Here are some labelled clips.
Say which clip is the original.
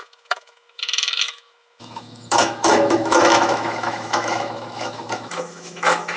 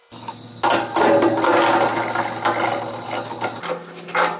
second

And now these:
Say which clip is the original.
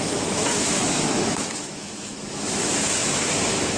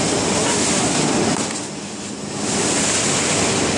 second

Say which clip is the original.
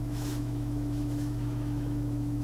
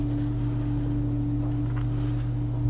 second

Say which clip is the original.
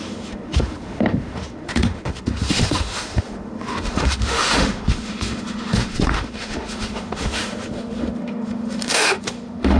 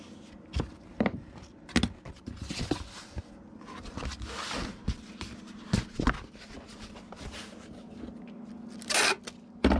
second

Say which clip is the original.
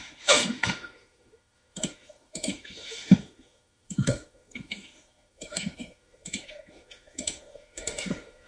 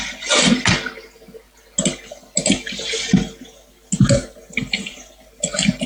second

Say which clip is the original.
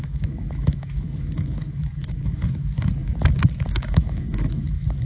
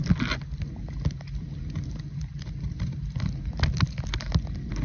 second